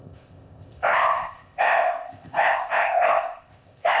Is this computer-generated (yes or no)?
yes